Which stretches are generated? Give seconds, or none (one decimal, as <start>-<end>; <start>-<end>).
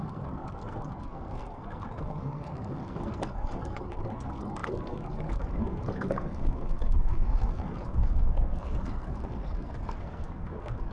0.0-10.9